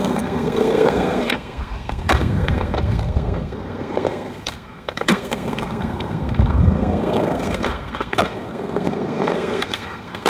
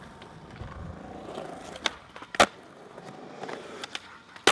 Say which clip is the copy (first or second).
first